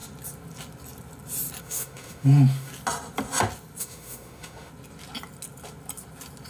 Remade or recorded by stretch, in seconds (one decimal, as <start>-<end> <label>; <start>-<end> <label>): 0.0-1.6 recorded; 1.6-2.7 remade; 2.7-3.8 recorded; 3.8-4.7 remade; 4.7-6.5 recorded